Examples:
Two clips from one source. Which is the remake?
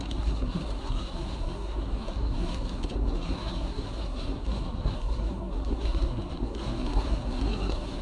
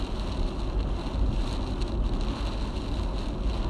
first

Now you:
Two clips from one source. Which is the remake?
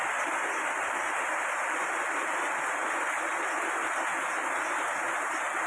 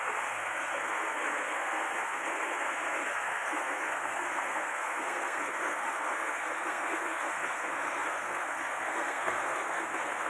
second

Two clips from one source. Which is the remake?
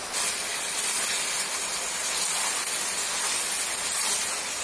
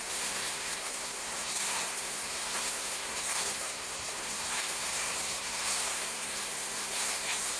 second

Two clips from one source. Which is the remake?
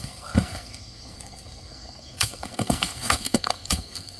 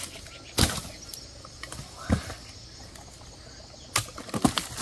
first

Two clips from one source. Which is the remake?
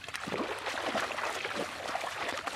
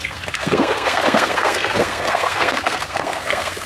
second